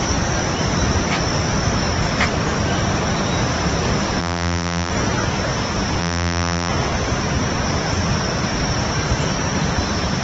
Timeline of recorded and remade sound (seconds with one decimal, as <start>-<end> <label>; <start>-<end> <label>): 0.0-4.2 recorded; 4.2-4.9 remade; 4.9-6.0 recorded; 6.0-6.7 remade; 6.7-10.2 recorded